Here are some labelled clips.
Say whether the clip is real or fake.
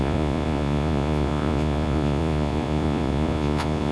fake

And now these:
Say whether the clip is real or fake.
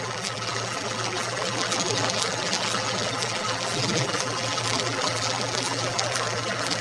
fake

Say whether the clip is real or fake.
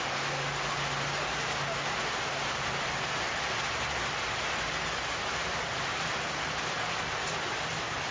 real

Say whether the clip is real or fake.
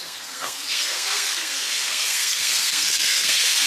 fake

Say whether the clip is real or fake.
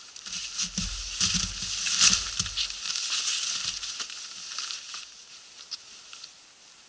real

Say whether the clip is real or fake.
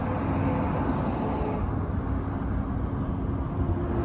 real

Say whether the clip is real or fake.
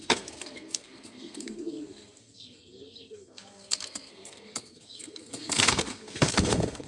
fake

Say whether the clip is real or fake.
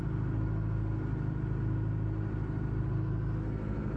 real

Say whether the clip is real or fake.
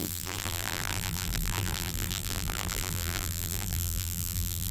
fake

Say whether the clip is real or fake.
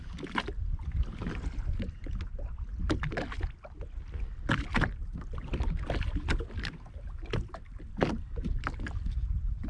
real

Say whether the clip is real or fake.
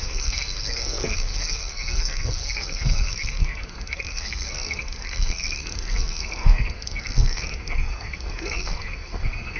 fake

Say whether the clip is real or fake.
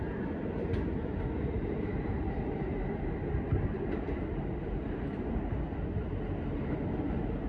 real